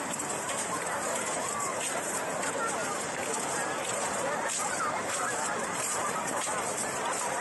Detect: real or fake fake